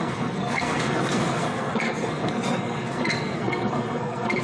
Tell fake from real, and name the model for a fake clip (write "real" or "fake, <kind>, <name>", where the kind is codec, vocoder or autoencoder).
fake, codec, SNAC